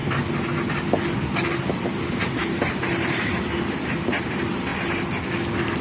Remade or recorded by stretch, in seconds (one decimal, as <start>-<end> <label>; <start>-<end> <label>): 0.0-2.4 recorded; 2.4-3.3 remade; 3.3-5.8 recorded